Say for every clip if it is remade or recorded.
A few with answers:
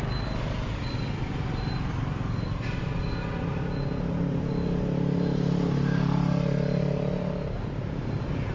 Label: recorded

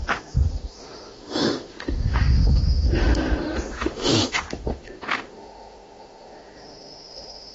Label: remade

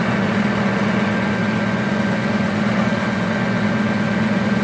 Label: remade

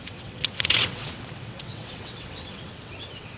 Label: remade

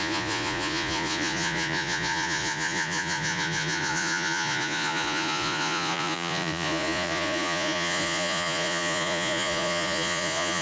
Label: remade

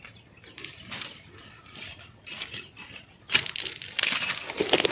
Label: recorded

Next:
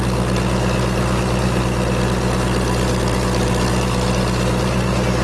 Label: recorded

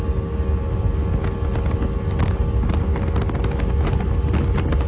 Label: recorded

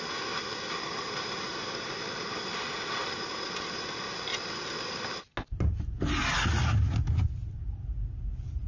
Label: recorded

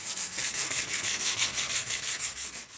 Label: remade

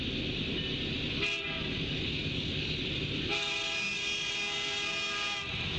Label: recorded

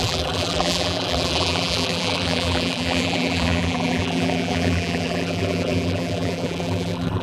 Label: remade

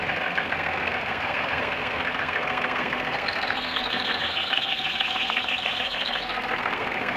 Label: remade